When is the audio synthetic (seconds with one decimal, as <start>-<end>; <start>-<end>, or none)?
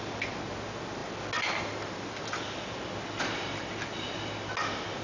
none